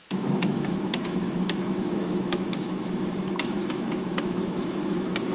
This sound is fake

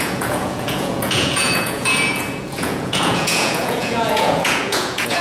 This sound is fake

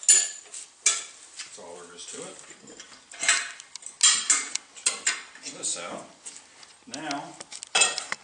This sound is real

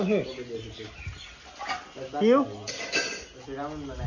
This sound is real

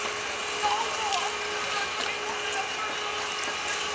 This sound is real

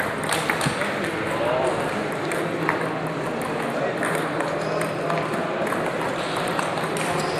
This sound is real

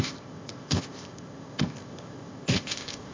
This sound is fake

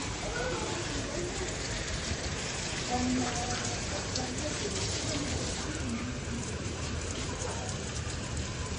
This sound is fake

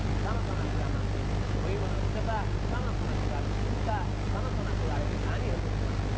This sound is real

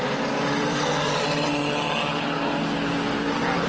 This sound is real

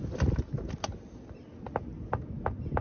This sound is real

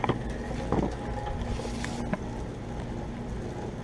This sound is real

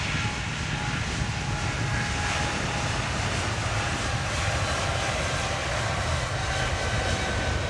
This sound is real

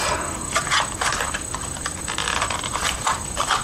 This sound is real